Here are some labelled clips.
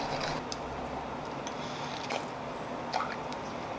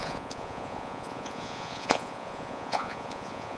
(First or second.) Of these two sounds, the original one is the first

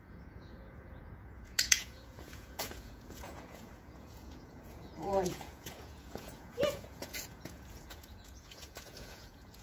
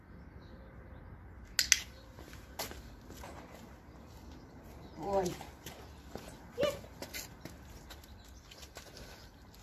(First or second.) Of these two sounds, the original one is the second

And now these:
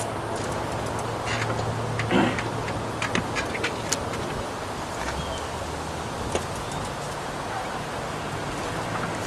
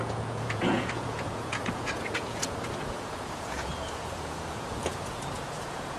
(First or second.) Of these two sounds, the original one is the first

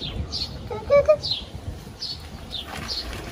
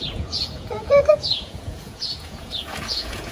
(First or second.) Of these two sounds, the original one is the first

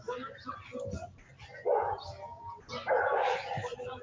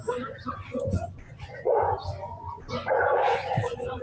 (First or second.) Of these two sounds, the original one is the first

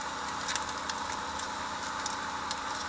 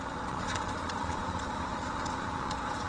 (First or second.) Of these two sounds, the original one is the first